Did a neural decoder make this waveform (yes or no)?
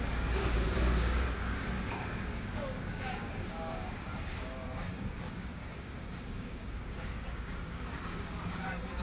yes